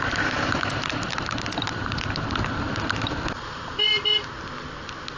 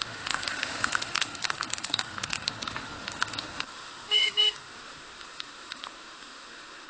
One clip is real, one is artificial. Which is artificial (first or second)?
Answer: second